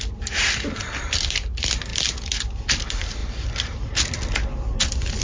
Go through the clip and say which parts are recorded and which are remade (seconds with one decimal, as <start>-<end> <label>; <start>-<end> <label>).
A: 0.0-5.2 recorded